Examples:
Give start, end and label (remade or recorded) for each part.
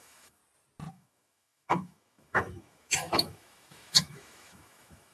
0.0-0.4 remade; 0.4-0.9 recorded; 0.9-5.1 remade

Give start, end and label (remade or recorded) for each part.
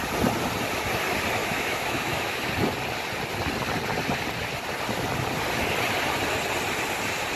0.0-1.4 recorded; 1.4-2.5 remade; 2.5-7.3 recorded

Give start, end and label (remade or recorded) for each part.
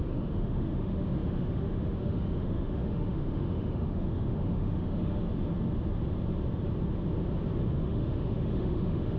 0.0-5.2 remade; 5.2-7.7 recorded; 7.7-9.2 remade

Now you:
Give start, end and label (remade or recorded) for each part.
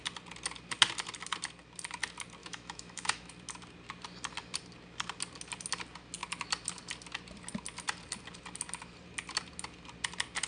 0.0-2.4 recorded; 2.4-3.3 remade; 3.3-10.5 recorded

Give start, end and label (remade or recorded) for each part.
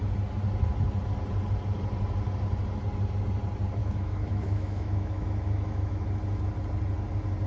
0.0-3.8 recorded; 3.8-6.0 remade; 6.0-7.5 recorded